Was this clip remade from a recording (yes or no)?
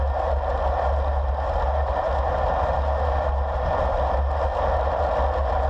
no